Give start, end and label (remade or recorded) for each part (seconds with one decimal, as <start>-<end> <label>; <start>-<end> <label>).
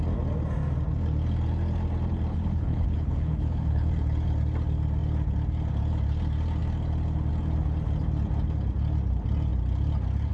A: 0.0-2.3 recorded; 2.3-3.9 remade; 3.9-10.3 recorded